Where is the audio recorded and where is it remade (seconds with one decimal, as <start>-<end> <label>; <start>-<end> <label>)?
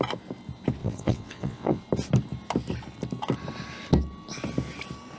0.0-0.8 recorded; 0.8-1.8 remade; 1.8-5.2 recorded